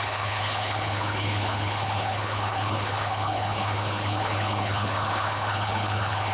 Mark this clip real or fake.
fake